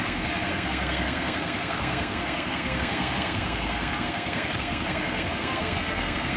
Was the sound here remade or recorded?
remade